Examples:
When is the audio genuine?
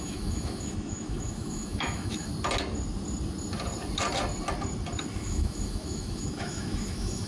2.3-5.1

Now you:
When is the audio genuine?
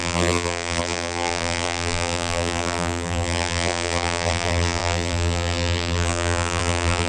none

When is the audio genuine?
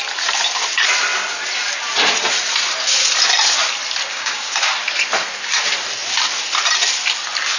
0.0-4.1; 4.7-7.6